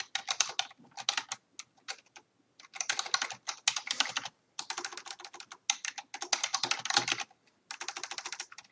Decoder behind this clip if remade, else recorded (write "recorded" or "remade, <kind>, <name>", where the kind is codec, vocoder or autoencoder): recorded